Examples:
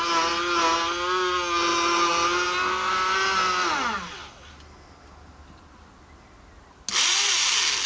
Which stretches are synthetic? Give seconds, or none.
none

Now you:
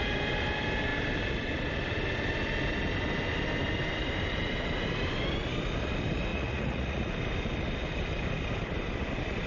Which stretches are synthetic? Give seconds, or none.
6.3-7.1 (vocoder, Vocos)

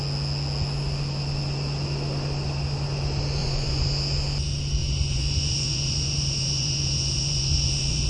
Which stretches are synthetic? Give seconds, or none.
3.4-3.9 (vocoder, Vocos); 4.8-8.1

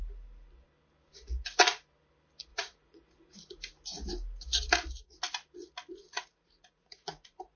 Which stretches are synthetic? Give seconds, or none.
2.5-3.3 (vocoder, Vocos); 5.9-7.6

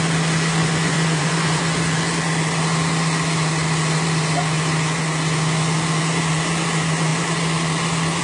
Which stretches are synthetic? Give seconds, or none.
0.6-1.6 (vocoder, Vocos)

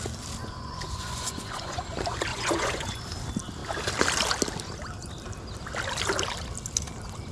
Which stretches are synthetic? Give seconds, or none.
0.4-1.8 (vocoder, Vocos); 2.3-3.0

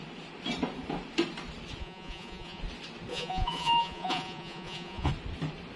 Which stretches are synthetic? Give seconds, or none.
1.8-2.6 (vocoder, Vocos); 3.1-5.1